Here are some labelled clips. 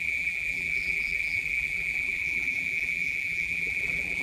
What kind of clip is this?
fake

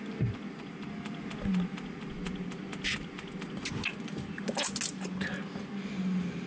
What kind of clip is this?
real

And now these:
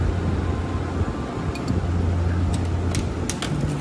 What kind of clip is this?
real